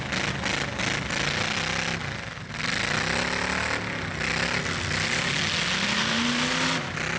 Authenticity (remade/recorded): recorded